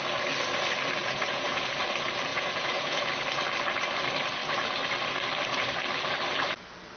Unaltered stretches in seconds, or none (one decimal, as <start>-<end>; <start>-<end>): 0.0-1.0; 1.7-2.3; 3.1-7.0